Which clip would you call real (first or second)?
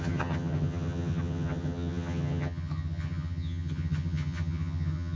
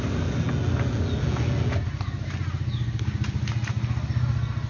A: second